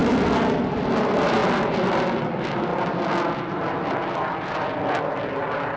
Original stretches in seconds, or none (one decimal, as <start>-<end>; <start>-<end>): 0.0-0.7; 2.7-5.0